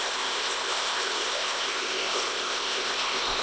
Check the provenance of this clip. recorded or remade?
remade